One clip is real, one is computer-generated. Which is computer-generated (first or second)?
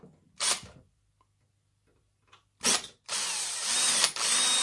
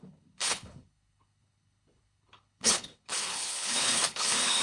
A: second